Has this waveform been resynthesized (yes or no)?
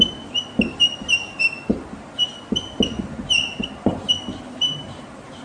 no